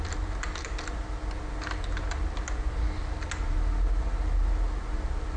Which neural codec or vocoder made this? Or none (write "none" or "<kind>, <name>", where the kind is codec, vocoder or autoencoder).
none